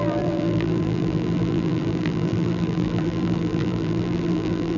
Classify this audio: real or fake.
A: fake